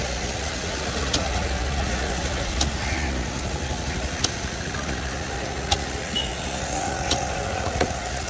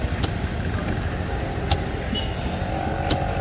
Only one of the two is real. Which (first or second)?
second